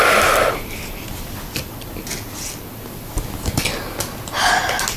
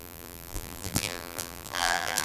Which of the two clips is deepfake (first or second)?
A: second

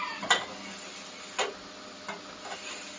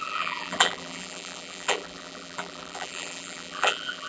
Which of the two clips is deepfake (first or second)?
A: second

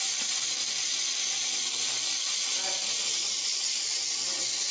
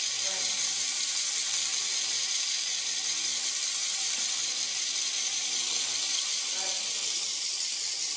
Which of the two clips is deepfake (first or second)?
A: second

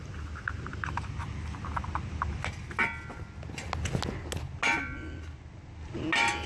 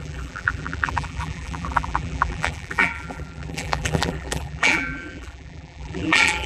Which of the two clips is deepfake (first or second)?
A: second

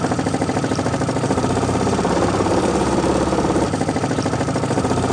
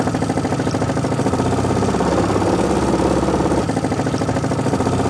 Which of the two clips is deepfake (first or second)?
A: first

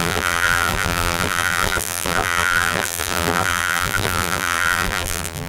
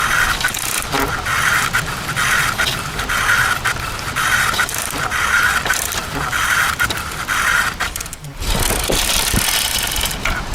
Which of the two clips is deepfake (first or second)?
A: first